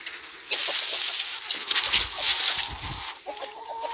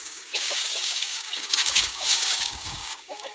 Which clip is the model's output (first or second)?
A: second